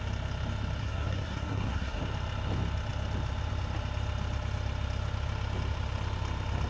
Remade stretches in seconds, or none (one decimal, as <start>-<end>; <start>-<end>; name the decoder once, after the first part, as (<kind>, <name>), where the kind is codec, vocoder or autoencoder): 0.8-2.0 (codec, SNAC)